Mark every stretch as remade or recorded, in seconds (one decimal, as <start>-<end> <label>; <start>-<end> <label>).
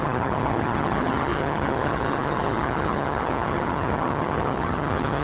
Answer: 0.0-5.2 remade